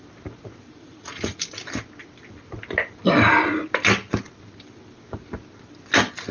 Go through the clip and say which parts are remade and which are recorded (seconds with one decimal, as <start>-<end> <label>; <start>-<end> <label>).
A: 0.0-0.8 recorded; 0.8-1.4 remade; 1.4-6.3 recorded